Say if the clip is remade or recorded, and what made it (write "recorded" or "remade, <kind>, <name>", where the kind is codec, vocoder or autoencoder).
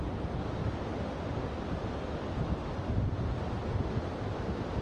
recorded